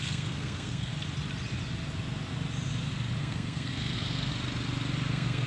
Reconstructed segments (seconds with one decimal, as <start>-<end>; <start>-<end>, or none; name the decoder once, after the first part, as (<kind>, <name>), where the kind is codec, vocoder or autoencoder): 0.0-0.9 (codec, SNAC); 3.2-4.3; 5.1-5.5